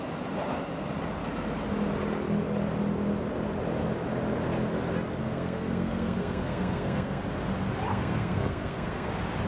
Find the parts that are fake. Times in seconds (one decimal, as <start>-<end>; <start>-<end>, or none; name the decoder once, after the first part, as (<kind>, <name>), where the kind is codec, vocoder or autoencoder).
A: 5.2-7.2 (codec, SNAC); 7.9-9.1

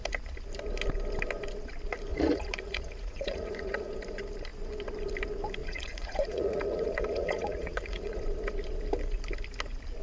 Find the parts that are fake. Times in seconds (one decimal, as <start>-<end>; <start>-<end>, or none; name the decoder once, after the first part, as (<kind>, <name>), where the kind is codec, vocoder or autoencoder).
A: 2.1-4.0 (vocoder, Vocos); 5.6-8.2

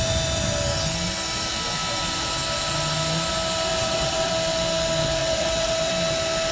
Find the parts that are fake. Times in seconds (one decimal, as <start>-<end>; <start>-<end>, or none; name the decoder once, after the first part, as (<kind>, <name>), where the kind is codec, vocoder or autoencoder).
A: 3.7-4.3 (vocoder, WaveNeXt); 5.2-5.9